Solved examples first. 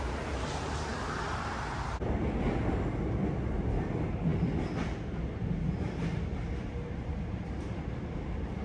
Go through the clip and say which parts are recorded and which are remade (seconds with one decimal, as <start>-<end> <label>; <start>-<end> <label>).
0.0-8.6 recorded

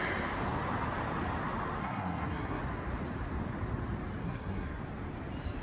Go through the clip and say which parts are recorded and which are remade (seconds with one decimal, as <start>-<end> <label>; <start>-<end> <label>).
0.0-1.8 recorded; 1.8-2.6 remade; 2.6-4.2 recorded; 4.2-4.8 remade; 4.8-5.6 recorded

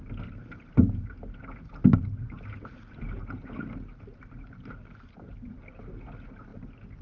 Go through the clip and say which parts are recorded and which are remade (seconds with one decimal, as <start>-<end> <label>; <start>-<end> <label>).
0.0-7.0 recorded

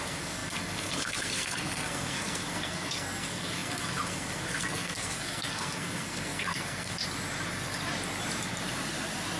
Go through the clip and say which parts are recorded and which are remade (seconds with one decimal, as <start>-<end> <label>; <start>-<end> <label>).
0.0-7.0 remade; 7.0-9.4 recorded

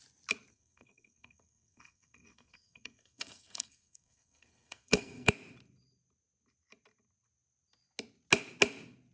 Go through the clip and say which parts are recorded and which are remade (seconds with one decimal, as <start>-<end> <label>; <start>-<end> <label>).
0.0-0.5 recorded; 0.5-5.3 remade; 5.3-9.1 recorded

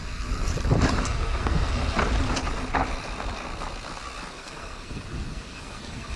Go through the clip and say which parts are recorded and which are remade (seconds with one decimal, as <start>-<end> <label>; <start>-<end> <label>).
0.0-0.5 remade; 0.5-1.0 recorded; 1.0-1.8 remade; 1.8-4.3 recorded; 4.3-6.2 remade